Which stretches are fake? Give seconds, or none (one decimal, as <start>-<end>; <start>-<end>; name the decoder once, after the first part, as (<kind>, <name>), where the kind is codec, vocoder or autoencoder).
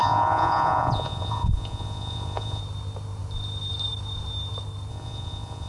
0.0-2.6 (vocoder, Vocos); 4.9-5.7